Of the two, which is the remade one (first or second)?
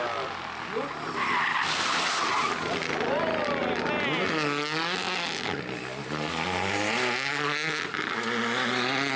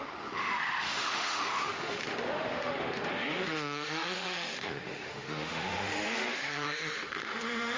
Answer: second